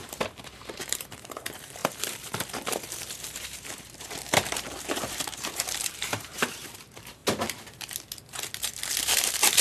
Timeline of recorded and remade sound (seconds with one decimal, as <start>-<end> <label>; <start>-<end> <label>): 0.0-7.2 remade; 7.2-9.0 recorded; 9.0-9.6 remade